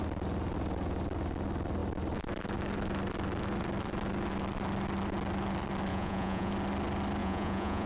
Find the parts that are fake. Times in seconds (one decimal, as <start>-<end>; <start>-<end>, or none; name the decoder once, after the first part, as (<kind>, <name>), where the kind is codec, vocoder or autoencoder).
5.9-6.5 (vocoder, Vocos); 7.2-7.9